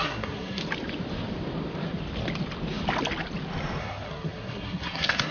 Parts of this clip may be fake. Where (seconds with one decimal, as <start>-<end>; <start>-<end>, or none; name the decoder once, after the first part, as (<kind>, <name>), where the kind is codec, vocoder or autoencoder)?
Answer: 0.0-0.6 (codec, SNAC); 3.8-5.3